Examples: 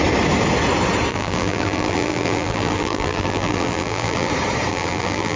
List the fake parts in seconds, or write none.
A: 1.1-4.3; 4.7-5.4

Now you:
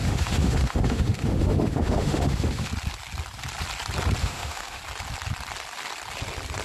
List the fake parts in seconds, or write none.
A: 0.0-2.7; 4.2-4.8

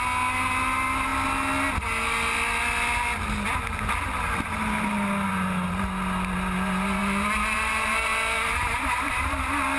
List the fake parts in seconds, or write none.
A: 7.0-9.4

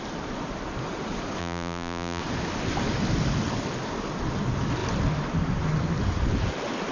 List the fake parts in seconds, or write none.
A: 1.4-2.2